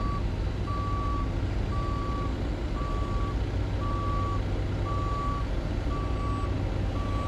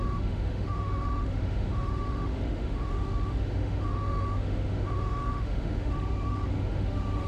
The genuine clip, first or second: first